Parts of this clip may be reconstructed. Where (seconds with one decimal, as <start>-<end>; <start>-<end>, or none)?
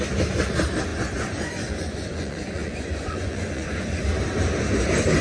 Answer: 0.9-4.0